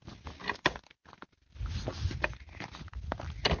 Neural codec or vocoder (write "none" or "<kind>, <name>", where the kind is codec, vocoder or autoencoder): none